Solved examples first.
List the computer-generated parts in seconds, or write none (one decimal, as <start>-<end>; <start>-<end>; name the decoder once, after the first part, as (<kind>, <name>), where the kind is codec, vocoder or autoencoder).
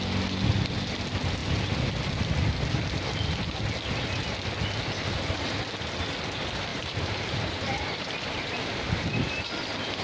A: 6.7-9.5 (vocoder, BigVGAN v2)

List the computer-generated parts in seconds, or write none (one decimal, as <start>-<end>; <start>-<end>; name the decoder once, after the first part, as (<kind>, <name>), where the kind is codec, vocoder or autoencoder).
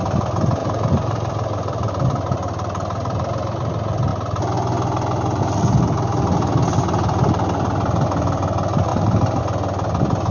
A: 0.6-1.9 (vocoder, BigVGAN v2); 8.9-9.4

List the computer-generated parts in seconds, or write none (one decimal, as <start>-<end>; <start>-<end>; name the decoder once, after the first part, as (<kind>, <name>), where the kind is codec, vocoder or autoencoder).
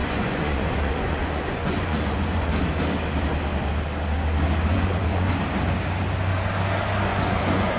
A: 0.0-2.5 (vocoder, Vocos); 4.7-5.3; 7.1-7.8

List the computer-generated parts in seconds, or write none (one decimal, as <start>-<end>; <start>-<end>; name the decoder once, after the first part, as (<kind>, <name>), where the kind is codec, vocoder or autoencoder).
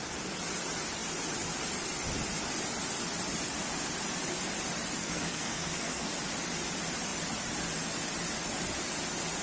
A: 5.0-6.1 (codec, SNAC)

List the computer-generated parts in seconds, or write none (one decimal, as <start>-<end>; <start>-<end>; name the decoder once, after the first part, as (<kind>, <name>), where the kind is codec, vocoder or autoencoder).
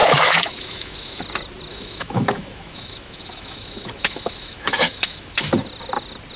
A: 0.0-1.2 (autoencoder, DAC-VAE); 1.7-5.5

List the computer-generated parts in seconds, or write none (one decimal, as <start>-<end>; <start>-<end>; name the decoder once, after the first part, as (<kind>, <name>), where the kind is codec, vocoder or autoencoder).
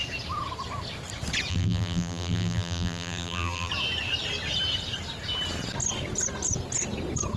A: 1.5-3.7 (vocoder, BigVGAN v2)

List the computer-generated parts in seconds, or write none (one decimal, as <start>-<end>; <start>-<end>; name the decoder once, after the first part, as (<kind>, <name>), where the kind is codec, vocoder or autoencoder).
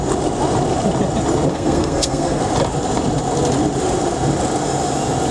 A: 1.5-2.4 (codec, SNAC)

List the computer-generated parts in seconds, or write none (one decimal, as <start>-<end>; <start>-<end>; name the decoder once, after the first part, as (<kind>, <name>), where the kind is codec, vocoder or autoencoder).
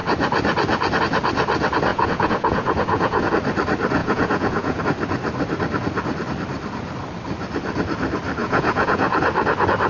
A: 1.9-3.3 (vocoder, Vocos); 4.0-4.8; 8.4-9.2